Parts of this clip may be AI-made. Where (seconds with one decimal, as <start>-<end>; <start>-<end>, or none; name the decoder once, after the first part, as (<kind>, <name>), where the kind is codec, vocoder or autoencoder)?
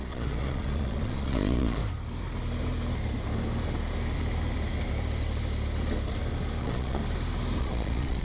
0.0-1.8 (vocoder, Vocos); 6.6-7.0; 7.6-8.2